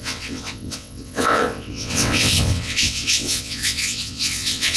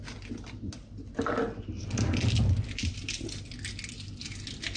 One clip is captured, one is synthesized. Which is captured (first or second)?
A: second